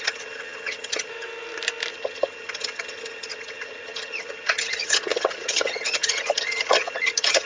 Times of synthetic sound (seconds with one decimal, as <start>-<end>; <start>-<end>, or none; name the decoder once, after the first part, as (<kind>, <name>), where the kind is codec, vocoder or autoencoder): 0.0-1.1 (vocoder, HiFi-GAN); 1.9-7.5